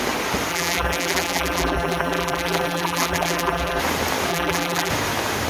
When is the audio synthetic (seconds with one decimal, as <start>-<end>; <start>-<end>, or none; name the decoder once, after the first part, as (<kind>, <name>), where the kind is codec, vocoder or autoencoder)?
0.5-3.8 (vocoder, BigVGAN v2); 4.3-4.9

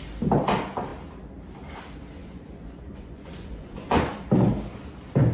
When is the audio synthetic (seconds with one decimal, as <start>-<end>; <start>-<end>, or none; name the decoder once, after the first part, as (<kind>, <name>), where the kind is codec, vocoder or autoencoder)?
2.2-4.2 (vocoder, Vocos)

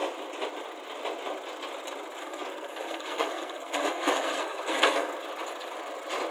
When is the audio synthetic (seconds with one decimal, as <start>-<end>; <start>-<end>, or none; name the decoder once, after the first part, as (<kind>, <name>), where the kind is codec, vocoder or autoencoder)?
2.2-5.2 (codec, SNAC)

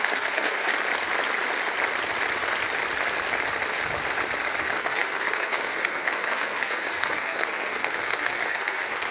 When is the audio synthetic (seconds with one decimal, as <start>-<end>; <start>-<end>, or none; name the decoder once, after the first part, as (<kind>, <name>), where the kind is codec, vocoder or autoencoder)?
0.0-0.7 (codec, SNAC); 4.6-9.1

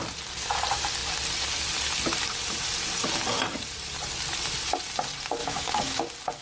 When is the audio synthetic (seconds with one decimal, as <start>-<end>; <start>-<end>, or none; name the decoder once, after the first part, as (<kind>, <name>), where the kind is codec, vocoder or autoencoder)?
5.4-6.0 (autoencoder, DAC-VAE)

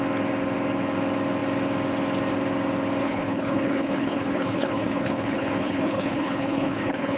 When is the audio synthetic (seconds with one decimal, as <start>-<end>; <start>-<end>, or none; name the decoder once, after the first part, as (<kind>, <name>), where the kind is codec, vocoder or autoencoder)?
3.0-7.2 (codec, HILCodec)

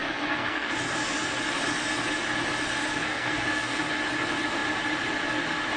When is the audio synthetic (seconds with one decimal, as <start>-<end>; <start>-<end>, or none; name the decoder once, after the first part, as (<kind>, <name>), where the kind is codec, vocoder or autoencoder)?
0.0-0.7 (codec, SNAC); 2.9-3.9

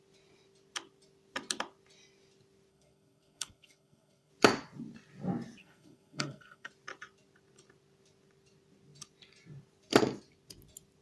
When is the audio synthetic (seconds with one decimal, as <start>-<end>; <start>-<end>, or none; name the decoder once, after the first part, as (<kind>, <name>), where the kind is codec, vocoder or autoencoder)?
2.7-4.3 (codec, SNAC); 5.6-6.7